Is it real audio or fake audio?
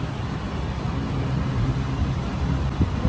real